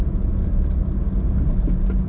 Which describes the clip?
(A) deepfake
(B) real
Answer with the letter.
B